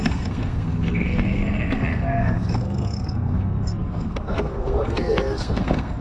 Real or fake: fake